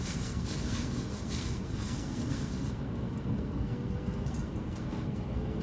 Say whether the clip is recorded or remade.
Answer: remade